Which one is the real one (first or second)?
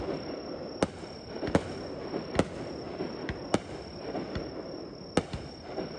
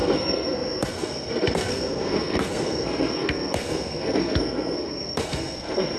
first